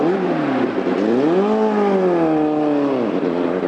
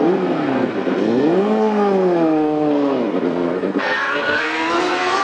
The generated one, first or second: second